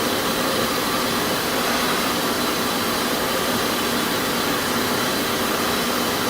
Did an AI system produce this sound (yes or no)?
yes